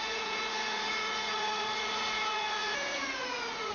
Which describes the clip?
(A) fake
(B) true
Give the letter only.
A